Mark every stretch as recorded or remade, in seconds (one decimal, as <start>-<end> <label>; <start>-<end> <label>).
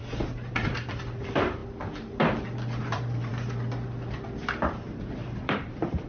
0.0-0.5 recorded; 0.5-1.6 remade; 1.6-2.4 recorded; 2.4-3.3 remade; 3.3-4.6 recorded; 4.6-6.1 remade